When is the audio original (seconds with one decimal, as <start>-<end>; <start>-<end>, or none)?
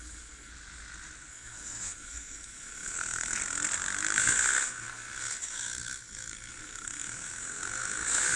0.5-1.3; 3.4-4.2